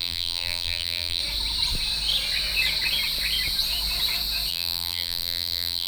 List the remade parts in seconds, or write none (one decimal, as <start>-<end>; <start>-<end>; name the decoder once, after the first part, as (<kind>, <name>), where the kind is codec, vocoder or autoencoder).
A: 0.0-1.2 (vocoder, BigVGAN v2); 4.5-5.9